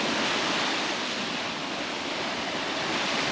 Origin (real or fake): real